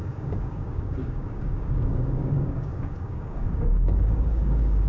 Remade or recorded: remade